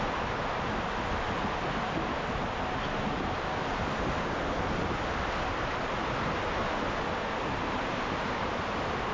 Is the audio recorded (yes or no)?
yes